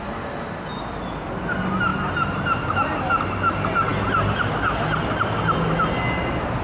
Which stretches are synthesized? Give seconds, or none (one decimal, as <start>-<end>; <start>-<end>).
none